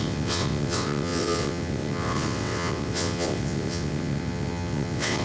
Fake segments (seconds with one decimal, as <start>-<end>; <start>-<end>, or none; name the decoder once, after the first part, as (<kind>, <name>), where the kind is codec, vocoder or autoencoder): 0.0-5.2 (vocoder, WaveNeXt)